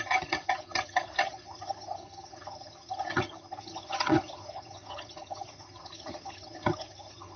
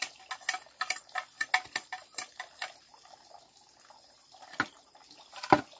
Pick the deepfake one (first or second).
first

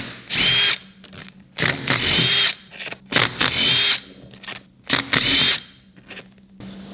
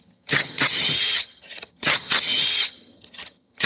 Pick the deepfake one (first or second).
second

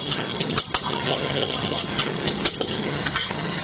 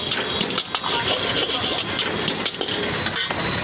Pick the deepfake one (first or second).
first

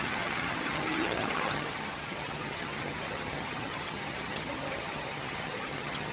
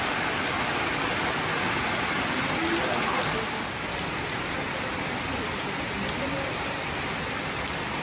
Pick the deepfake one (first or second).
first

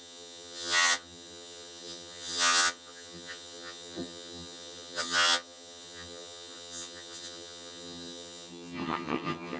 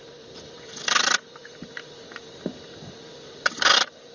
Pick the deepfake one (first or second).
first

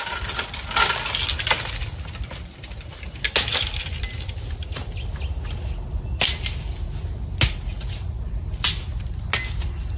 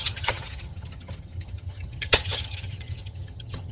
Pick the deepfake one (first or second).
second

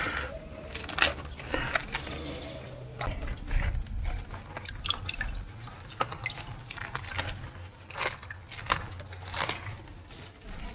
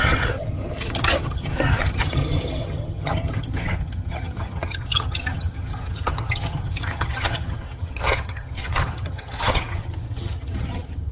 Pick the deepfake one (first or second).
second